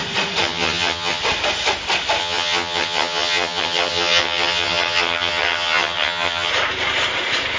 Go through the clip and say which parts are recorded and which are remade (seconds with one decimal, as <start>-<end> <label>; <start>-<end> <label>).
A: 0.0-0.4 recorded; 0.4-1.2 remade; 1.2-2.2 recorded; 2.2-6.5 remade; 6.5-7.6 recorded